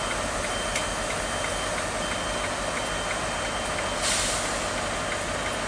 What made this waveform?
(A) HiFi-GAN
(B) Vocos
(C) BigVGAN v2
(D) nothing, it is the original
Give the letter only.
D